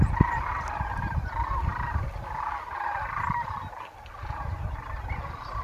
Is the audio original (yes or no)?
yes